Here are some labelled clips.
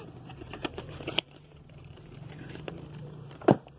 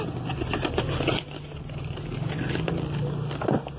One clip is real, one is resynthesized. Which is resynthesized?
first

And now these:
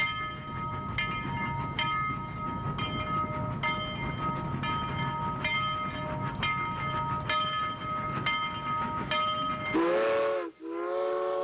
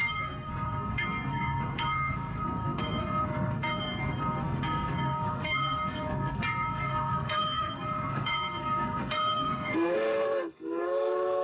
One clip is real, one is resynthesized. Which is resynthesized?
second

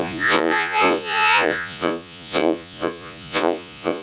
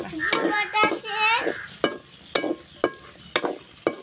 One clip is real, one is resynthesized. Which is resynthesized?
first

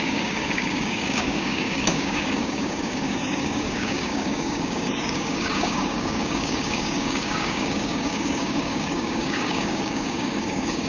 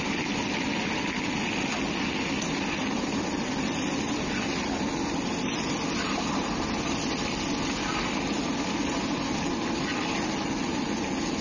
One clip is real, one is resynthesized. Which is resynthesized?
first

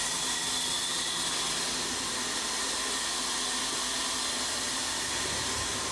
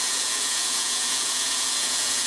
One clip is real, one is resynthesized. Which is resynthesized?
second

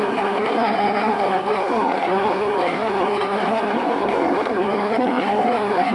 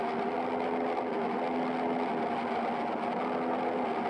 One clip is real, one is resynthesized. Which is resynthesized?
first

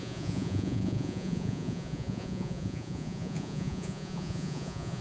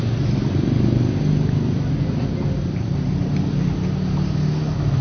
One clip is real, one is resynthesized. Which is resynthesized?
first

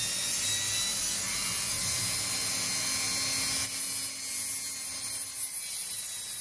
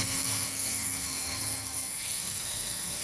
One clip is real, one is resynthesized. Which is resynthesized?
second